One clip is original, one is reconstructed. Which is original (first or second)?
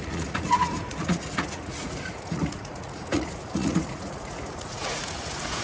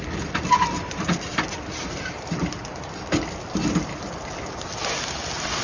second